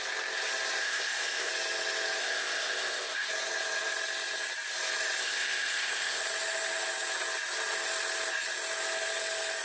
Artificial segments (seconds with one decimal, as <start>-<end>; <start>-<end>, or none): 0.8-1.5; 2.2-3.3; 5.2-6.2